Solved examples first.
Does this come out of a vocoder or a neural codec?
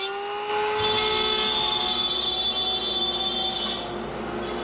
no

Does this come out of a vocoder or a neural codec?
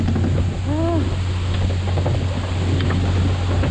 no